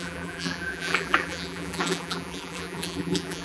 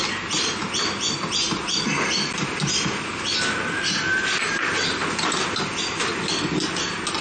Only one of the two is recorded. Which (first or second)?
second